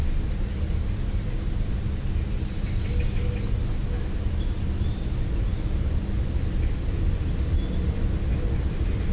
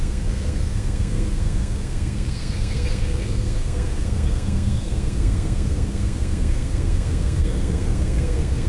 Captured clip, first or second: first